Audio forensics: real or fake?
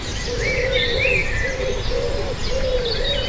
real